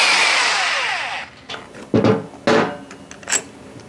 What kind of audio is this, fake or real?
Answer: real